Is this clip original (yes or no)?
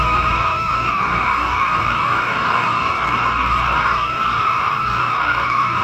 no